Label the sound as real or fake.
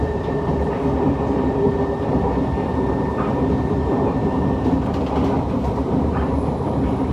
fake